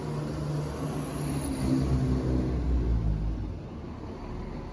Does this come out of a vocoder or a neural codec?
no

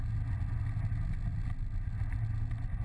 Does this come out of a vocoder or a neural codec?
no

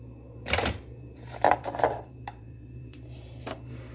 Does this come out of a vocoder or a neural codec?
yes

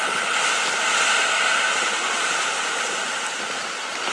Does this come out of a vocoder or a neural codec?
no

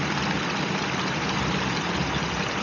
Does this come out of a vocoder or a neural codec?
no